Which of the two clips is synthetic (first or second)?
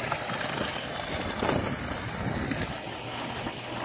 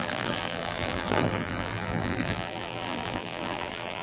second